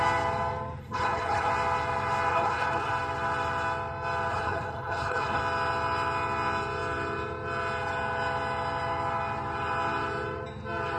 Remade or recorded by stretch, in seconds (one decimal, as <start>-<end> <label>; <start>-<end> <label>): 0.0-0.8 recorded; 0.8-1.5 remade; 1.5-2.3 recorded; 2.3-2.9 remade; 2.9-4.3 recorded; 4.3-5.4 remade; 5.4-11.0 recorded